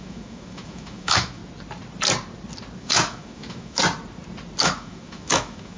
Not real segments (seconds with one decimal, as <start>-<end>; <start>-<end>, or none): 0.0-1.4; 2.8-3.8; 4.6-5.8